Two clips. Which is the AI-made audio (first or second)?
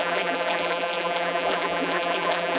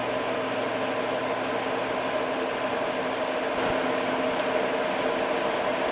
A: first